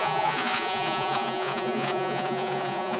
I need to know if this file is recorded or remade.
remade